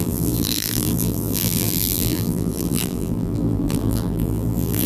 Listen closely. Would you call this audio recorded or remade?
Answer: remade